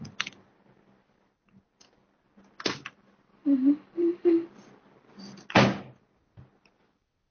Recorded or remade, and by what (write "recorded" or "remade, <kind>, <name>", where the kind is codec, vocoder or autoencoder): recorded